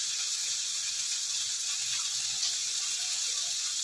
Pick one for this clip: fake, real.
fake